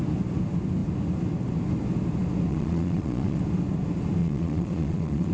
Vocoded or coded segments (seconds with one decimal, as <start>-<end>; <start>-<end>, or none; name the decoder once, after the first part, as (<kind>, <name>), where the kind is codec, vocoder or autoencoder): 2.5-3.4 (vocoder, Vocos); 4.2-5.3